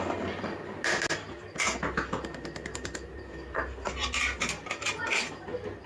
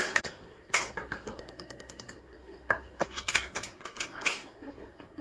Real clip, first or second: first